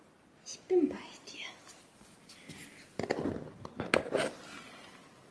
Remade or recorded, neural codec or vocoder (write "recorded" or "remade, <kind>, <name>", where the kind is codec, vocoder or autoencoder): recorded